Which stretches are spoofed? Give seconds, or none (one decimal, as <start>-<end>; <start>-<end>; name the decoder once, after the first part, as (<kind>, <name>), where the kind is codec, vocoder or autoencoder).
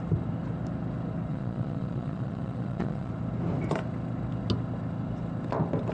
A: 1.3-3.1 (vocoder, Vocos)